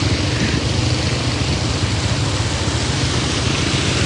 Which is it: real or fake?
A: real